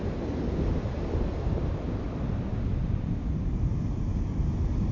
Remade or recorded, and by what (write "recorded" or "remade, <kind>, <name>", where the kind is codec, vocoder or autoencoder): recorded